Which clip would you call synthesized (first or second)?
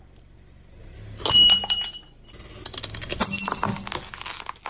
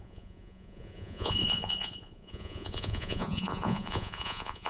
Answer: second